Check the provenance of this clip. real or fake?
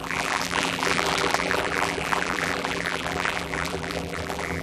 fake